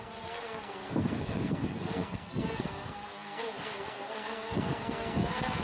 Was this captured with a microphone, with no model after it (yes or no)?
no